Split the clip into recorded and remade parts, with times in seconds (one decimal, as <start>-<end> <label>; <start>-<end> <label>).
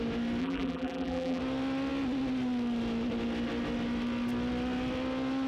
0.0-0.4 recorded; 0.4-1.4 remade; 1.4-5.5 recorded